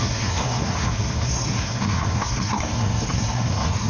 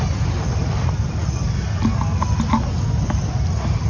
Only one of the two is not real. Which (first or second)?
first